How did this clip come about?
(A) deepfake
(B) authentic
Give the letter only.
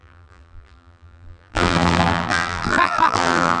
A